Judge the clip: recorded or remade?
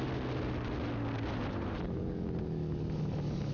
recorded